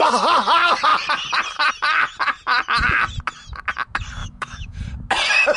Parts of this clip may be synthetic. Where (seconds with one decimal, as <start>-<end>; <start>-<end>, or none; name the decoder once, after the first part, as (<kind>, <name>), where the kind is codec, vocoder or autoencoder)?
4.2-4.8 (autoencoder, DAC-VAE)